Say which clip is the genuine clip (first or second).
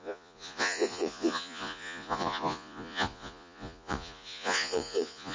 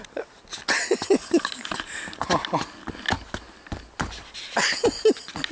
second